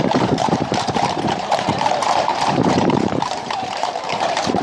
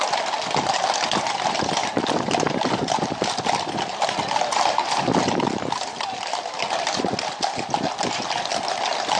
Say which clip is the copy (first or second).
first